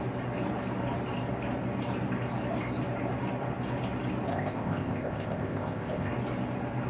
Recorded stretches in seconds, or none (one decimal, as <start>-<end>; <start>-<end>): 0.0-4.3; 6.1-6.9